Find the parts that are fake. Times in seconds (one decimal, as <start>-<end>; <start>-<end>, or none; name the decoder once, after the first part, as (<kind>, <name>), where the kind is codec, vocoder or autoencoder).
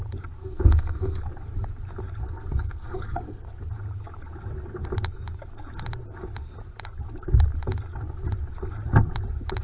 0.4-1.2 (codec, SNAC); 2.2-3.4